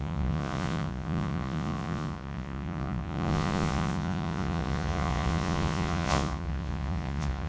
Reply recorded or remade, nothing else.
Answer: remade